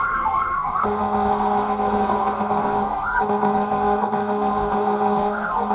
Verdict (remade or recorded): remade